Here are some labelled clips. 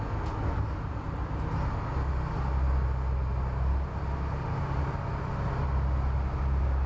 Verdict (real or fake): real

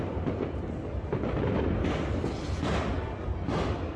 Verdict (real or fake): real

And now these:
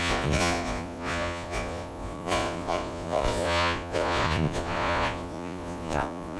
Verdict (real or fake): fake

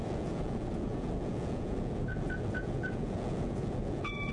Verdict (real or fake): fake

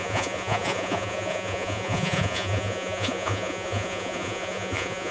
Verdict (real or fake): fake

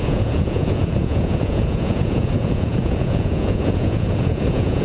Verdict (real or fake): fake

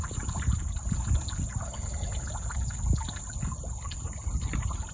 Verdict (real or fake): real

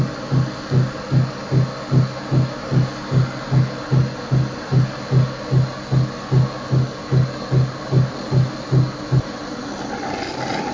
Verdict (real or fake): real